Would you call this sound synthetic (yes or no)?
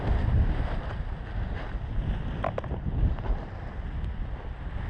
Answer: no